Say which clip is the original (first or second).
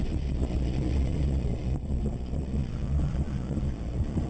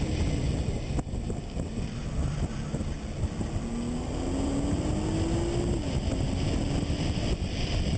second